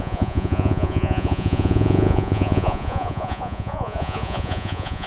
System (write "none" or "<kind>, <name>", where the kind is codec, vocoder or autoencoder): vocoder, Vocos